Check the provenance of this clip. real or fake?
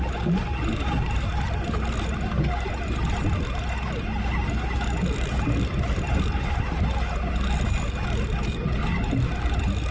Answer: real